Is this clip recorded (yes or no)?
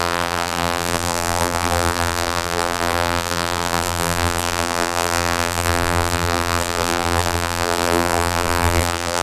no